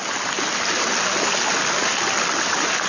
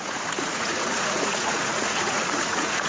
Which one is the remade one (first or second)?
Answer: second